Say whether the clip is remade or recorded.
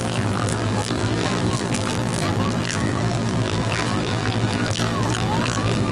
remade